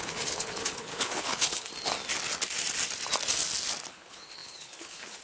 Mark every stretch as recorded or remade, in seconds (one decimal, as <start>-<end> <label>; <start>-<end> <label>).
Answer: 0.0-1.7 remade; 1.7-3.9 recorded; 3.9-5.2 remade